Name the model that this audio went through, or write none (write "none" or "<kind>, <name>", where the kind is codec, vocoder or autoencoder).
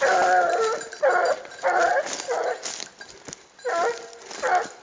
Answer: none